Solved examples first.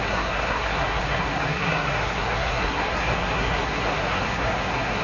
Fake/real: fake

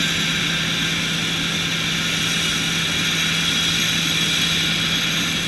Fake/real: real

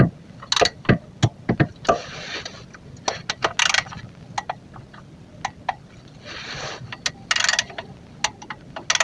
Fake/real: real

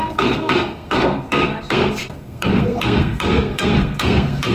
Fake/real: fake